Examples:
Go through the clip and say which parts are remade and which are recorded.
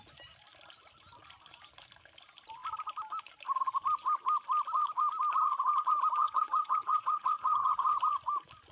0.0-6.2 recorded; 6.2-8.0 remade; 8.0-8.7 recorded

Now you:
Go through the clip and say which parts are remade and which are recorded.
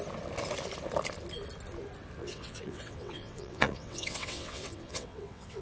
0.0-2.2 recorded; 2.2-5.6 remade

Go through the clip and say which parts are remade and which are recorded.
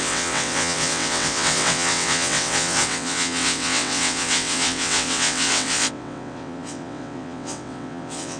0.0-8.4 remade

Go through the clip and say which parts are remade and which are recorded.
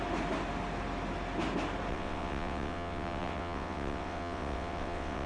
0.0-1.9 recorded; 1.9-5.3 remade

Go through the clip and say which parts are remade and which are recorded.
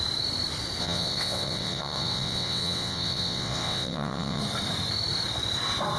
0.0-0.8 recorded; 0.8-4.4 remade; 4.4-6.0 recorded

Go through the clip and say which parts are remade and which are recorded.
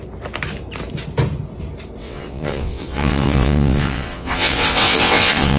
0.0-2.0 recorded; 2.0-5.6 remade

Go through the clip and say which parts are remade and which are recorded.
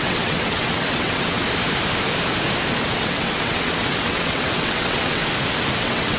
0.0-1.4 remade; 1.4-2.9 recorded; 2.9-5.2 remade; 5.2-5.8 recorded; 5.8-6.2 remade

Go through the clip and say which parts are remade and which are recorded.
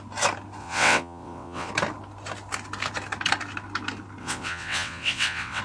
0.0-0.6 recorded; 0.6-1.7 remade; 1.7-4.2 recorded; 4.2-5.6 remade